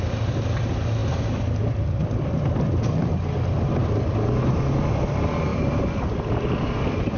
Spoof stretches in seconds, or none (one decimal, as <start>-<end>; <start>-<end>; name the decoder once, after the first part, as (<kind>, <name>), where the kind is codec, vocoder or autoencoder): none